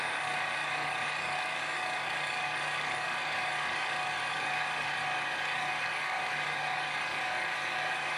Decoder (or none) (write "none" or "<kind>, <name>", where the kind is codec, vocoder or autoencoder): codec, DAC